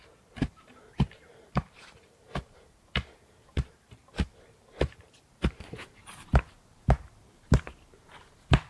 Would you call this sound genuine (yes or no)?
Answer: no